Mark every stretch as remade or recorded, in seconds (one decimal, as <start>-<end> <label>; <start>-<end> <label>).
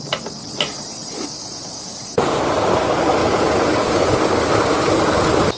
0.0-1.4 recorded; 1.4-2.4 remade; 2.4-3.2 recorded; 3.2-4.2 remade; 4.2-5.6 recorded